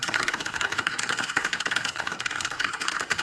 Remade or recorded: remade